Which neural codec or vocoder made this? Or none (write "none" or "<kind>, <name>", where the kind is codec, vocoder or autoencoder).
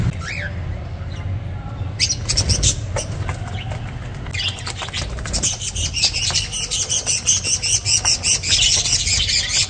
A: none